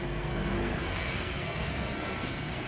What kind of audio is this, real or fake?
fake